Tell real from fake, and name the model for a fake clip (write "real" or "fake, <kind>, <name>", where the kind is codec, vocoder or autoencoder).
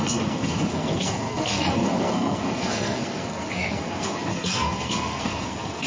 fake, codec, SNAC